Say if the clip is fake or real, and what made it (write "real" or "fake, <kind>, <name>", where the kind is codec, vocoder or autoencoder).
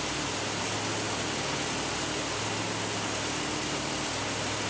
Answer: real